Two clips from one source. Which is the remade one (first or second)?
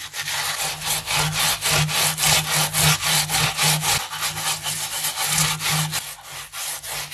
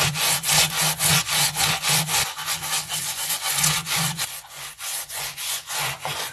second